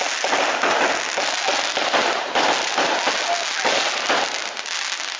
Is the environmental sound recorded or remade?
recorded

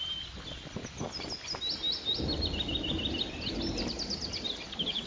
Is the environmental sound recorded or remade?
recorded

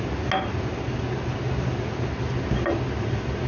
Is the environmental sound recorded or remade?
recorded